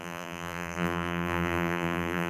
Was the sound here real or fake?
fake